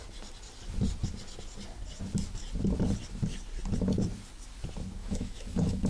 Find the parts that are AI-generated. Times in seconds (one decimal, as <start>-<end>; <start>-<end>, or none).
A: 5.0-5.9